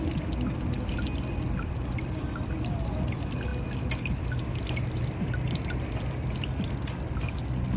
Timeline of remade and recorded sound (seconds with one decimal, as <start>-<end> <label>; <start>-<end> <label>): 0.0-7.8 recorded